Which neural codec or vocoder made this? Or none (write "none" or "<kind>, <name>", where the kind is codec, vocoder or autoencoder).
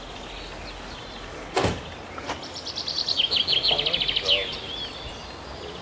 none